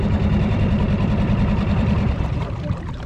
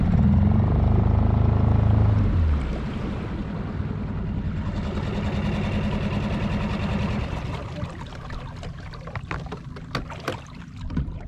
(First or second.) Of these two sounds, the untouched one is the second